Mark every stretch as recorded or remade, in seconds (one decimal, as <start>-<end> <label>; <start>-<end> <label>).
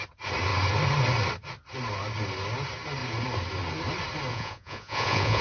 0.0-4.3 recorded; 4.3-5.4 remade